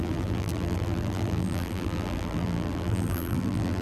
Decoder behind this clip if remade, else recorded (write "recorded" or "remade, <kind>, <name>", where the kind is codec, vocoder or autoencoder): remade, vocoder, BigVGAN v2